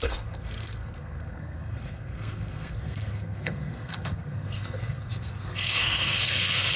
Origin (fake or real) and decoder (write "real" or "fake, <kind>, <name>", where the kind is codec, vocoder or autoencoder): fake, codec, SNAC